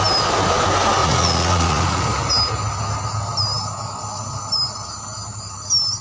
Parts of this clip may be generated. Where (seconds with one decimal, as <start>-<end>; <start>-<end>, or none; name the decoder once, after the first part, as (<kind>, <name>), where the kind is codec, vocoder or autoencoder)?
1.0-2.0 (vocoder, Vocos)